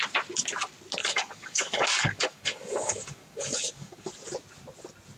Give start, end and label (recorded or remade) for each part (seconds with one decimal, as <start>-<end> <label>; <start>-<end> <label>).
0.0-1.0 recorded; 1.0-4.1 remade; 4.1-5.2 recorded